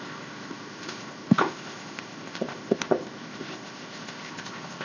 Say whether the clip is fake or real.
fake